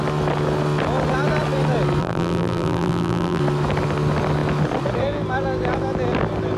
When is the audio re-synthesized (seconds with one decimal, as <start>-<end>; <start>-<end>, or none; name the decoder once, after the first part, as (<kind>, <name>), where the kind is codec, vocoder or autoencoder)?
2.0-3.4 (vocoder, BigVGAN v2)